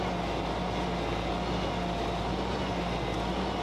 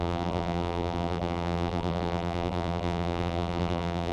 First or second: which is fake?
second